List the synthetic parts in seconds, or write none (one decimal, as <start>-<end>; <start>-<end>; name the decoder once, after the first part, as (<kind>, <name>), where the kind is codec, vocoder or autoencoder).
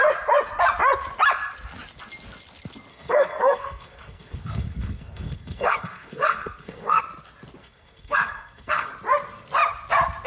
2.9-7.0 (codec, SNAC); 7.6-8.9